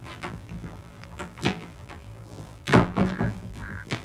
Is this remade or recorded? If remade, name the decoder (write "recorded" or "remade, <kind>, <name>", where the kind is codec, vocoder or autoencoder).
remade, vocoder, BigVGAN v2